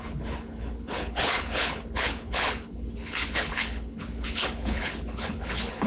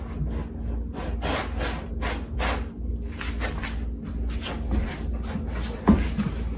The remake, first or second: first